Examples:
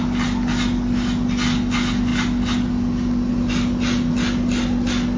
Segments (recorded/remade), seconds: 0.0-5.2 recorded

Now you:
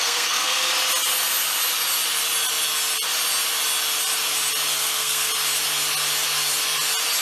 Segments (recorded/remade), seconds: 0.0-0.7 remade; 0.7-4.7 recorded; 4.7-5.3 remade; 5.3-7.2 recorded

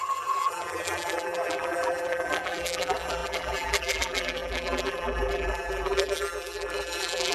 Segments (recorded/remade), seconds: 0.0-7.3 remade

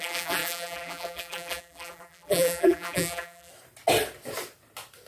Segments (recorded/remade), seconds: 0.0-3.5 remade; 3.5-5.1 recorded

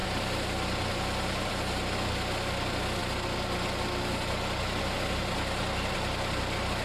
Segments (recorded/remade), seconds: 0.0-6.8 recorded

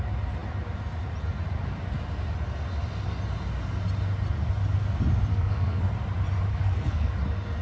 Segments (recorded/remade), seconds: 0.0-5.3 recorded; 5.3-5.9 remade; 5.9-6.5 recorded; 6.5-7.1 remade; 7.1-7.6 recorded